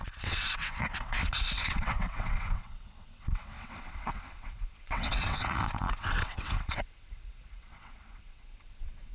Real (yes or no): no